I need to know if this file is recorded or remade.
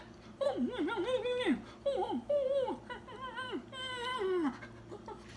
recorded